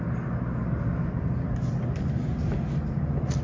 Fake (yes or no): no